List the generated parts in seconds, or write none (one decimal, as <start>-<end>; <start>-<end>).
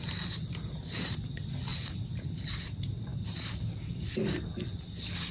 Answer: 1.7-2.5; 3.1-4.4